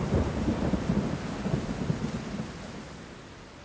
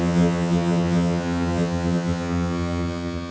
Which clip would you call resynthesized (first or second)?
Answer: second